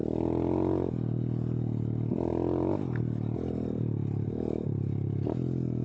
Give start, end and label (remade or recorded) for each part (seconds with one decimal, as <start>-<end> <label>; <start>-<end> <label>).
0.0-5.8 recorded